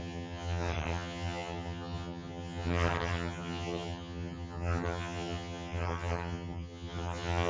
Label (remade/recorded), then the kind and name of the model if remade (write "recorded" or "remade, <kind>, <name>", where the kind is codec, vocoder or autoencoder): remade, vocoder, HiFi-GAN